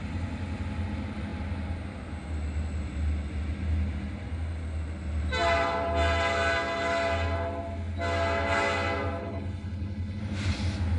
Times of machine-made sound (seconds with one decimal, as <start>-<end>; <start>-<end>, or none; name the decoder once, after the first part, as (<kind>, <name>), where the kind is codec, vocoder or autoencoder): 9.2-10.2 (codec, HILCodec)